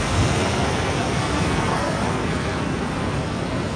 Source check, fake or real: fake